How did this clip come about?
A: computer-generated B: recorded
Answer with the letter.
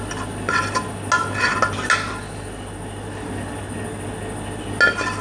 B